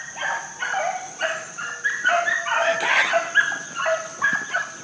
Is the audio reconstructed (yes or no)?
no